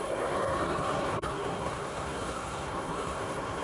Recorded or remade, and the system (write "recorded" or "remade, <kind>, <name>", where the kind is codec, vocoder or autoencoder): remade, codec, SNAC